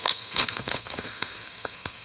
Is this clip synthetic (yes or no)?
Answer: yes